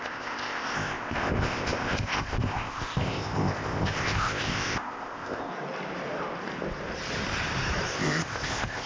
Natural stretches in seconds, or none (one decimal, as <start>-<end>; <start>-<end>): 5.5-7.9

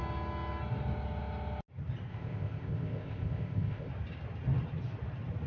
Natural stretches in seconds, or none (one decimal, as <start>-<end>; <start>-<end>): 0.0-2.1; 3.9-5.5

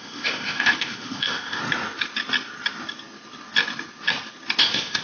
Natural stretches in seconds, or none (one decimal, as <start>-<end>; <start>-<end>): 1.6-4.6

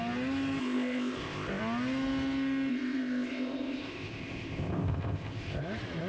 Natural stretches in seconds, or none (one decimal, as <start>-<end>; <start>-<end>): 0.0-0.6; 1.6-2.7; 5.6-6.1

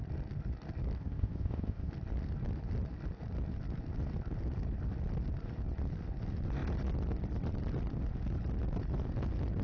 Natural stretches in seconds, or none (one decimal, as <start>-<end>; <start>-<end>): 0.0-1.0; 1.9-9.6

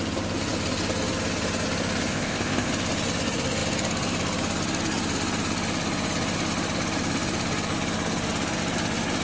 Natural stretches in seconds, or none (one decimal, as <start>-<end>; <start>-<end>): 0.0-2.1; 2.7-9.2